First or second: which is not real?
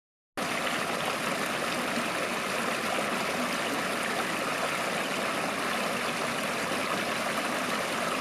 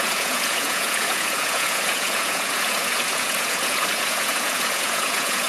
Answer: second